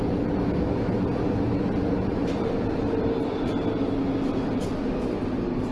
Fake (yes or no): no